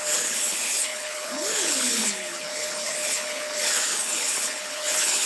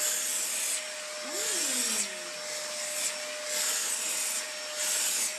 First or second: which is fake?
first